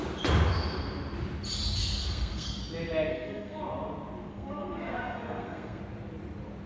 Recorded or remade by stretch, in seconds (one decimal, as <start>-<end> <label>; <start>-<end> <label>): 0.0-2.0 recorded; 2.0-2.6 remade; 2.6-3.1 recorded; 3.1-3.6 remade; 3.6-4.3 recorded; 4.3-5.8 remade; 5.8-6.7 recorded